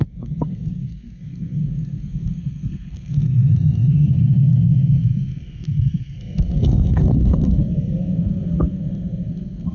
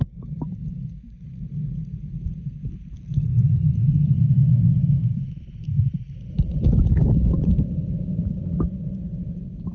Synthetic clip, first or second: first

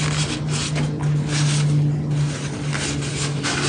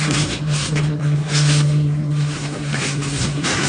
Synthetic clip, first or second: second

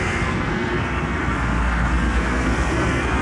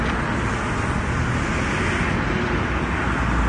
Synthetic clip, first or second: first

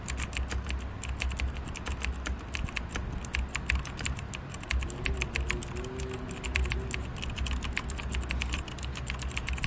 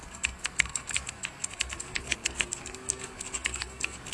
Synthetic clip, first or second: second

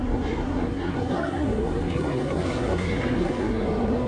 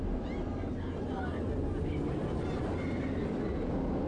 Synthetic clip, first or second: first